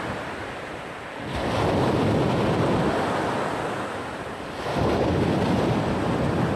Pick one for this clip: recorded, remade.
recorded